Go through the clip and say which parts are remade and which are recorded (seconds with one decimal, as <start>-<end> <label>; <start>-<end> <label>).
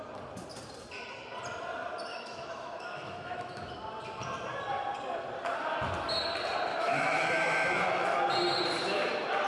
0.0-2.1 recorded; 2.1-3.7 remade; 3.7-6.7 recorded; 6.7-8.2 remade; 8.2-9.5 recorded